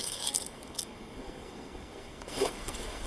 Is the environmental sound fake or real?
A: fake